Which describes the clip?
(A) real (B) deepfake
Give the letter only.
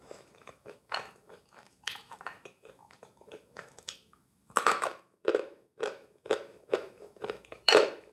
B